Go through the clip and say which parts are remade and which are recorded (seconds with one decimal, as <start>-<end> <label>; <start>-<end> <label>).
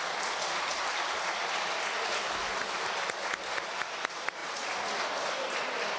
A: 0.0-0.7 recorded; 0.7-4.0 remade; 4.0-6.0 recorded